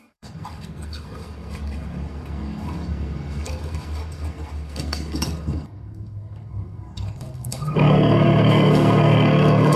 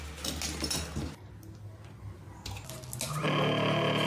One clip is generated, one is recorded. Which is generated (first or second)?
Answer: first